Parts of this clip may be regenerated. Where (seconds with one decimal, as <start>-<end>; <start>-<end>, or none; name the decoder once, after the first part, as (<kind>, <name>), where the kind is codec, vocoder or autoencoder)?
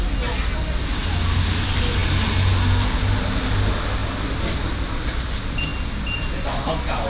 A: none